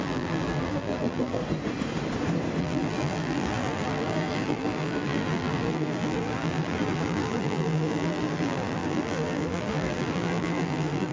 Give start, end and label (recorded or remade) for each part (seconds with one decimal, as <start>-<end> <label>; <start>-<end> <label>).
0.0-1.4 remade; 1.4-2.6 recorded; 2.6-11.1 remade